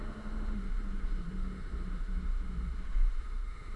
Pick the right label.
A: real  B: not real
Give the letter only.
B